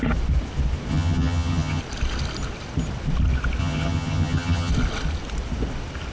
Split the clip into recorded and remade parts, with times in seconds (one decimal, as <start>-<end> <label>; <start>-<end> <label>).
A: 0.0-0.9 recorded; 0.9-1.8 remade; 1.8-3.6 recorded; 3.6-4.7 remade; 4.7-6.1 recorded

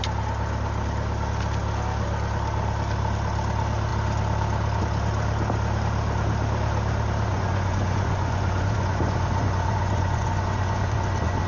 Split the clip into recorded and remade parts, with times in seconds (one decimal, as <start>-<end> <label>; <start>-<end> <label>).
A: 0.0-7.3 recorded; 7.3-11.5 remade